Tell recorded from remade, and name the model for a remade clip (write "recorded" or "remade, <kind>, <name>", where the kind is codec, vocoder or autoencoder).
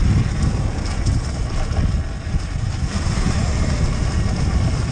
remade, vocoder, BigVGAN v2